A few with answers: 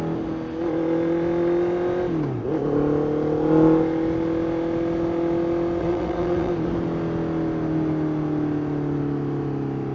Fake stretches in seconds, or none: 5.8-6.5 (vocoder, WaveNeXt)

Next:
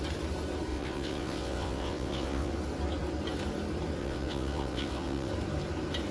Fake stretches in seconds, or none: 0.7-2.5 (vocoder, WaveNeXt); 4.0-5.3

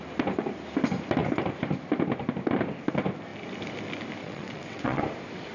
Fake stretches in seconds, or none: 4.2-5.0 (vocoder, WaveNeXt)

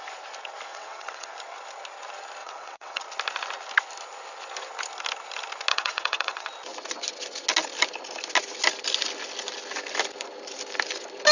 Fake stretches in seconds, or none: 0.7-1.3 (vocoder, WaveNeXt); 2.4-3.0; 5.7-6.5

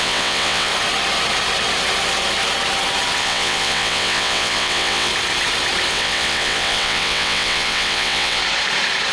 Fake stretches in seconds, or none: 0.0-0.7 (vocoder, WaveNeXt); 3.2-5.1; 5.9-8.4